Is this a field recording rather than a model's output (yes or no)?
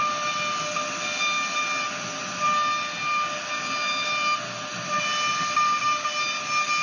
yes